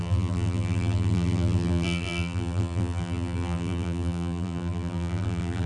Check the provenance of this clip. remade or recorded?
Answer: remade